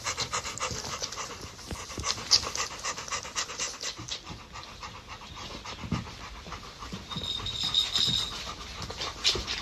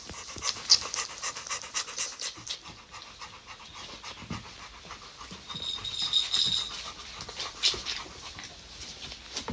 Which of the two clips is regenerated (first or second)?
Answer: first